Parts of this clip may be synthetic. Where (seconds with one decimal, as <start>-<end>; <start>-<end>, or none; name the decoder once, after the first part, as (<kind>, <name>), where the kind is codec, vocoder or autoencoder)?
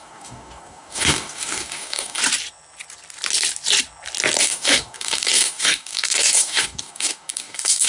0.0-2.2 (codec, DAC); 4.4-7.9